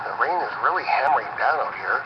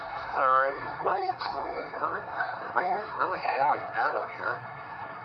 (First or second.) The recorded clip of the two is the first